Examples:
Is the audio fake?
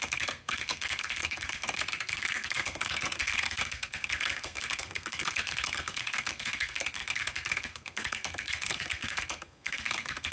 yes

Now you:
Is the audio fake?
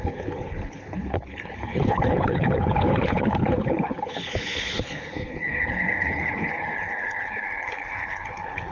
yes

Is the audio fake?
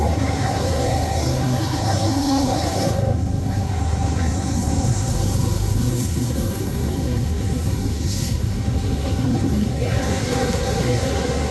yes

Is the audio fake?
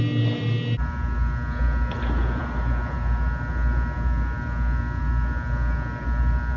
no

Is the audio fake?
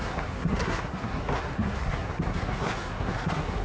yes